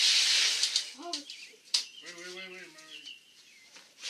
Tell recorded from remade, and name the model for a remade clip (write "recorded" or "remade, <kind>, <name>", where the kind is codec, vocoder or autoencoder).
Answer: recorded